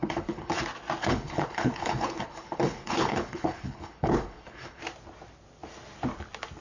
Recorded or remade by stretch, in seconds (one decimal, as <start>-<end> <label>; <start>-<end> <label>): 0.0-0.6 remade; 0.6-1.0 recorded; 1.0-4.8 remade; 4.8-6.6 recorded